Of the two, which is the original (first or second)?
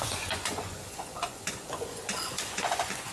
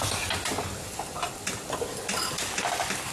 second